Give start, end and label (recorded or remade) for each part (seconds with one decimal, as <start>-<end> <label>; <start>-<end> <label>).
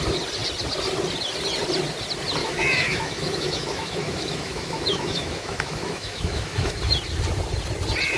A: 0.0-2.4 recorded; 2.4-6.8 remade; 6.8-8.2 recorded